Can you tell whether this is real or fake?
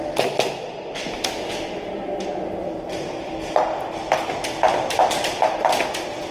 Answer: real